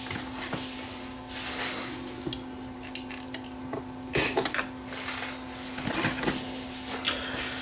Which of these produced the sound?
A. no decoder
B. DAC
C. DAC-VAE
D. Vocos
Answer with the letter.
A